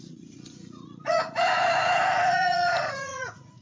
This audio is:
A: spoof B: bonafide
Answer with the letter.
A